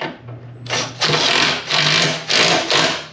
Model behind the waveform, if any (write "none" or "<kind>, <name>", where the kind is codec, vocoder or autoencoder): none